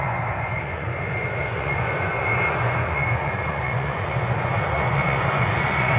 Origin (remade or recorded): remade